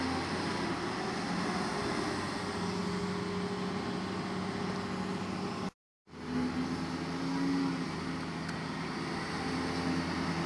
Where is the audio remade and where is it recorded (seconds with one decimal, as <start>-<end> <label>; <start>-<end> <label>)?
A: 0.0-10.5 recorded